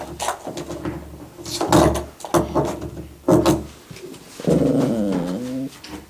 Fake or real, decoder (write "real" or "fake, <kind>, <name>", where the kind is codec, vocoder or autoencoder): real